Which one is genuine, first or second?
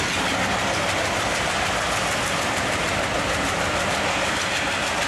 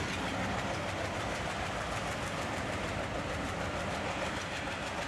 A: first